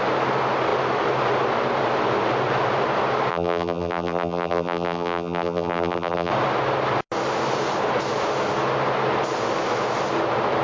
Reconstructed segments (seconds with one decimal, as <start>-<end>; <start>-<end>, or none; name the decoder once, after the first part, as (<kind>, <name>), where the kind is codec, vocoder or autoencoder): 3.3-6.3 (vocoder, BigVGAN v2)